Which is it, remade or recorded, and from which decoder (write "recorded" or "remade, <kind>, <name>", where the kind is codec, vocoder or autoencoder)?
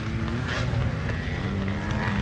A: recorded